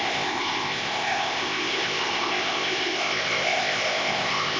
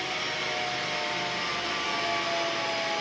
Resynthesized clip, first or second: first